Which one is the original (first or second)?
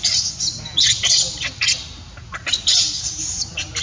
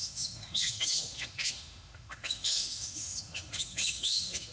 first